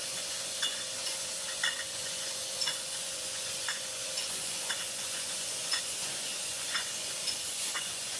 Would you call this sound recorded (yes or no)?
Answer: no